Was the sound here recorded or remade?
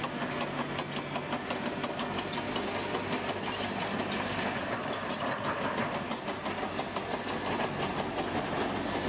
recorded